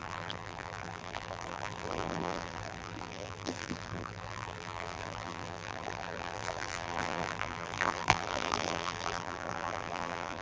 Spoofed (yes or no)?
yes